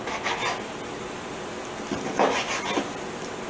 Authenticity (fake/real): real